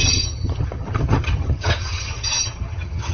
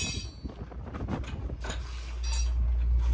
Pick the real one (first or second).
second